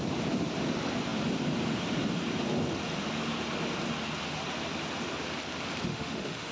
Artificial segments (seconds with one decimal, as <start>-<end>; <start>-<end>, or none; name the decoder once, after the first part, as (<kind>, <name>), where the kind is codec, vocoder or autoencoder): 5.9-6.5 (autoencoder, DAC-VAE)